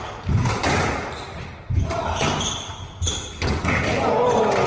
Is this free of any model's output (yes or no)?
yes